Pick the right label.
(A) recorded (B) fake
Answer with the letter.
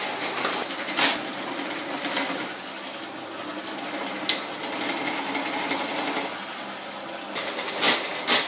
A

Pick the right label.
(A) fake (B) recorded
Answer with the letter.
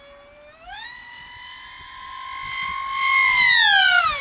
B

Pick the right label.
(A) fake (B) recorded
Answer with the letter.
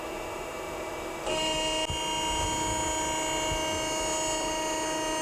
B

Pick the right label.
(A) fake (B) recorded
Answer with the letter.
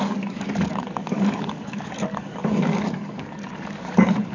A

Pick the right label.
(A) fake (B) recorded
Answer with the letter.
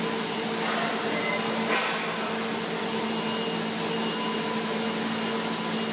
B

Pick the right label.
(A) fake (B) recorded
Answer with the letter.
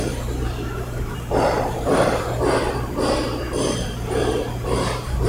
A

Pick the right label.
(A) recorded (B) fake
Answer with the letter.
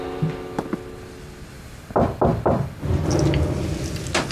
A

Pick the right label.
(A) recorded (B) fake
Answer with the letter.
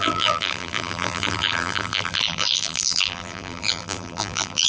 B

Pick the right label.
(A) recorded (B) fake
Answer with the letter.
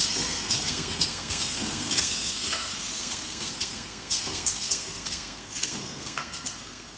B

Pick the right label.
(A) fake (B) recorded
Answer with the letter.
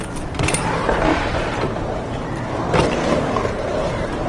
A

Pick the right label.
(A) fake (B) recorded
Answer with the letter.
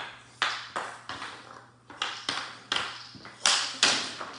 B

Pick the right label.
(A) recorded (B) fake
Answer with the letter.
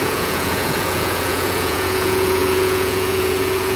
B